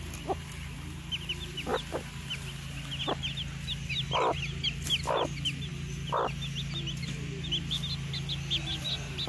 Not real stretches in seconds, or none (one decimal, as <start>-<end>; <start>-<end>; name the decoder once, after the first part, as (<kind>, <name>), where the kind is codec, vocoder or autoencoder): none